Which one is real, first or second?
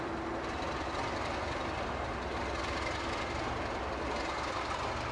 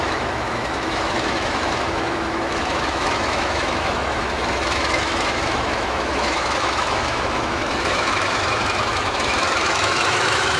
first